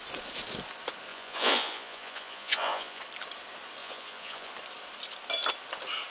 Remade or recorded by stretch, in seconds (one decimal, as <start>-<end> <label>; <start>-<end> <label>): 0.0-1.1 recorded; 1.1-3.0 remade; 3.0-3.8 recorded; 3.8-4.5 remade; 4.5-6.1 recorded